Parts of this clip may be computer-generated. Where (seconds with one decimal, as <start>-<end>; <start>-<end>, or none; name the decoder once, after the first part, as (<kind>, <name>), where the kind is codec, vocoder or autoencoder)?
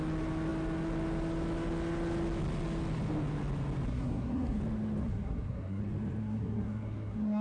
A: 3.9-4.6 (codec, SNAC); 5.0-5.8; 6.2-7.4